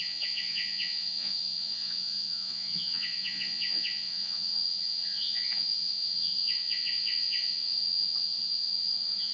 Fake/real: fake